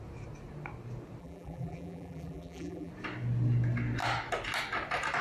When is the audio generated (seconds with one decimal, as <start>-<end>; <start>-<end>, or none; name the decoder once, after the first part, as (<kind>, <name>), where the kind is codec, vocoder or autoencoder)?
1.2-2.9 (vocoder, BigVGAN v2)